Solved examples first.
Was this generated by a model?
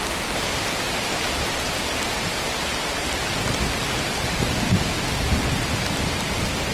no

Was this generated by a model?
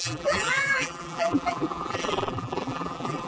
yes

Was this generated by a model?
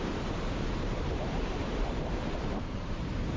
yes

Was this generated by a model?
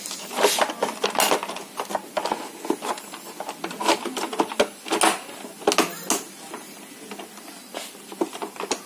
no